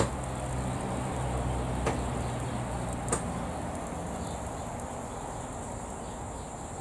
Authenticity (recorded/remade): recorded